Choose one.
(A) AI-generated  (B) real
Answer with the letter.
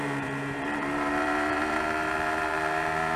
A